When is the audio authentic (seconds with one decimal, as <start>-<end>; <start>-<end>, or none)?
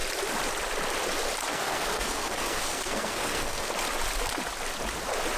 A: 0.0-1.5; 3.7-5.4